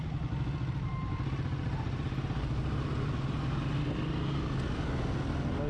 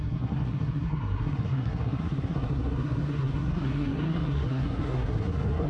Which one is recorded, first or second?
first